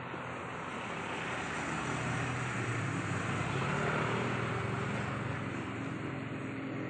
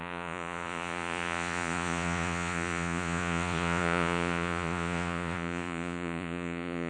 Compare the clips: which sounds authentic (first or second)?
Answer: first